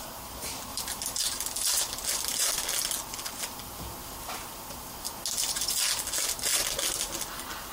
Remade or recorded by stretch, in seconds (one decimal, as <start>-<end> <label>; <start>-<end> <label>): 0.0-0.7 recorded; 0.7-1.2 remade; 1.2-4.0 recorded; 4.0-4.5 remade; 4.5-7.7 recorded